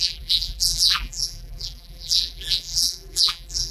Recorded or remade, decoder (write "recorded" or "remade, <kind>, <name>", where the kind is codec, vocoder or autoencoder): remade, vocoder, BigVGAN v2